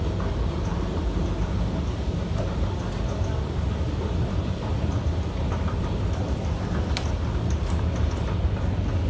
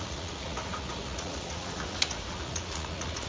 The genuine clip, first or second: first